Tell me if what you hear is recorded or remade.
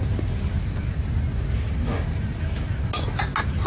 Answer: recorded